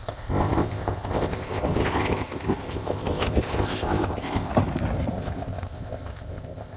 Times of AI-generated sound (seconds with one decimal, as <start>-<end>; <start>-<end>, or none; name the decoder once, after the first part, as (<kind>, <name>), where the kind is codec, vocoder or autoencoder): 0.0-4.5 (codec, ZipCodec); 5.1-6.8